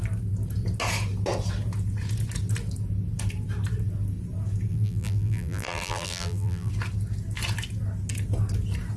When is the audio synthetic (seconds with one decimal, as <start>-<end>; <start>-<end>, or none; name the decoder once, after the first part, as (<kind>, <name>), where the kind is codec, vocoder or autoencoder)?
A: 4.7-6.7 (vocoder, BigVGAN v2)